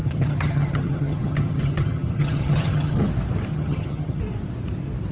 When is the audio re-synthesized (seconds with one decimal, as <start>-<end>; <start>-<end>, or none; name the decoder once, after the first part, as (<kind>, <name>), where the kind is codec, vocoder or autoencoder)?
0.0-3.1 (vocoder, HiFi-GAN); 3.5-4.2